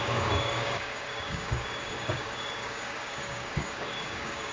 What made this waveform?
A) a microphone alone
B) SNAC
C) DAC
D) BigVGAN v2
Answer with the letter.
C